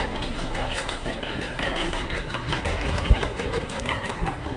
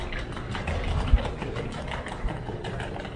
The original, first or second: second